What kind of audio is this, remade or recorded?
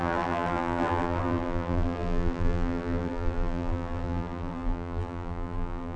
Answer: remade